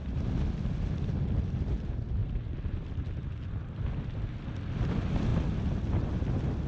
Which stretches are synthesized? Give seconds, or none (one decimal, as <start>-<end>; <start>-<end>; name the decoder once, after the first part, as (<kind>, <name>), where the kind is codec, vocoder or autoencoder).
none